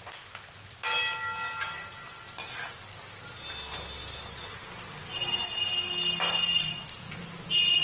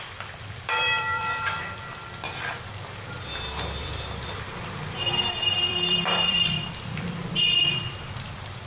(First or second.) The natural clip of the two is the first